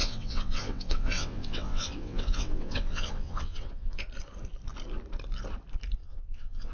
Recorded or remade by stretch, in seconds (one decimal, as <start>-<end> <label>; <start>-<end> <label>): 0.0-4.0 remade; 4.0-6.0 recorded; 6.0-6.7 remade